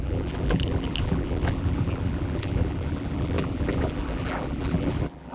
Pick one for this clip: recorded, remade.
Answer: remade